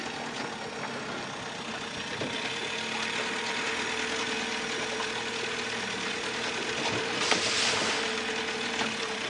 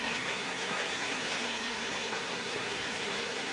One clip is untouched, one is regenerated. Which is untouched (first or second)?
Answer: first